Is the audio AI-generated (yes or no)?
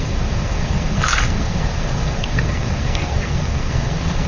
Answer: yes